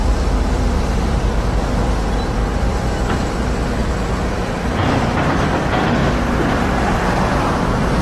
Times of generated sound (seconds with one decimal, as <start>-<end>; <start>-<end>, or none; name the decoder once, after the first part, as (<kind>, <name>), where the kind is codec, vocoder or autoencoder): 0.0-3.8 (vocoder, BigVGAN v2); 4.3-6.0; 6.6-8.0

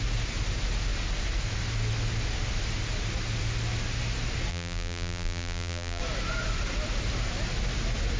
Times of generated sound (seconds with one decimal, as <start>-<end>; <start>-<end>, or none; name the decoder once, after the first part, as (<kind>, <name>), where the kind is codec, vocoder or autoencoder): 4.5-6.0 (vocoder, BigVGAN v2)

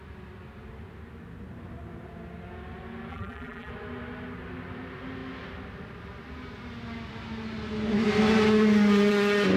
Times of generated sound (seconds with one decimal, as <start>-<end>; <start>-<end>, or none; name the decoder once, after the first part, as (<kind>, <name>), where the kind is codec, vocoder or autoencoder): 3.1-3.7 (vocoder, BigVGAN v2)

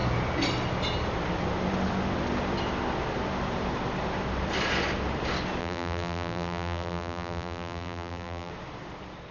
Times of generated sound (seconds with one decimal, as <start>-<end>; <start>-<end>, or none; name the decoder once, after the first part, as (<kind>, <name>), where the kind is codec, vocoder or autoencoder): 5.6-8.5 (vocoder, BigVGAN v2)